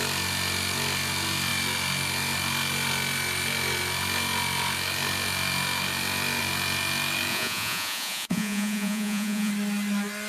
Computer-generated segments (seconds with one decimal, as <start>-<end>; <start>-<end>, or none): 7.3-9.5